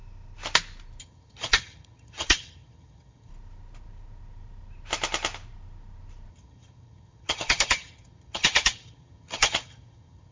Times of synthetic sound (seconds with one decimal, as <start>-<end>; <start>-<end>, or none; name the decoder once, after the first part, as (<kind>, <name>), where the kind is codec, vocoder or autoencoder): 1.0-3.3 (vocoder, HiFi-GAN); 6.3-10.3